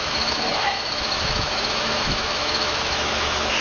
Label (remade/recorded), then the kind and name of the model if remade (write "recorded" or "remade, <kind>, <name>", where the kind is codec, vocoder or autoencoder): remade, autoencoder, DAC-VAE